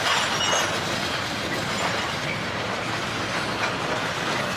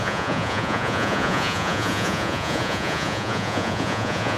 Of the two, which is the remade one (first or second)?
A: second